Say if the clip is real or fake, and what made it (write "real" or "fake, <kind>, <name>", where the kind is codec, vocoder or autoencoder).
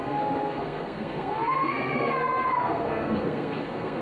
fake, codec, SNAC